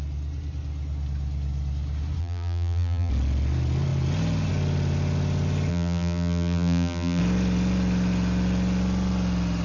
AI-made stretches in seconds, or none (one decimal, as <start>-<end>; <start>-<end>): 2.2-3.1; 5.7-7.2